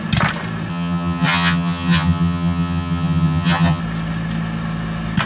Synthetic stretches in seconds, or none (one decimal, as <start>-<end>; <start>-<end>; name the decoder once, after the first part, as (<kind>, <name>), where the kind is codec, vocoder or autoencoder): 0.7-3.8 (vocoder, HiFi-GAN)